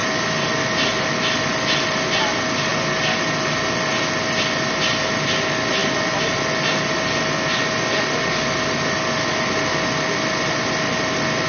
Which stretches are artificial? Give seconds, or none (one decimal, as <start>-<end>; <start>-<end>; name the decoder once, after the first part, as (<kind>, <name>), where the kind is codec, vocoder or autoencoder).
none